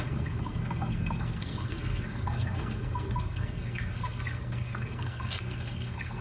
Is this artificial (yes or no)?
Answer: yes